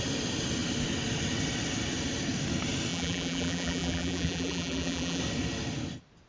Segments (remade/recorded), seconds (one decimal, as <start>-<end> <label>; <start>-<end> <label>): 0.0-2.9 recorded; 2.9-5.2 remade; 5.2-6.3 recorded